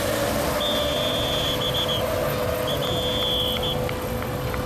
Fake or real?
real